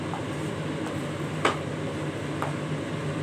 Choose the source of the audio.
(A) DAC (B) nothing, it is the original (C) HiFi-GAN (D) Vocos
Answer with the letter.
B